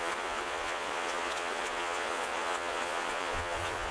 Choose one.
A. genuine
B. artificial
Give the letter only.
B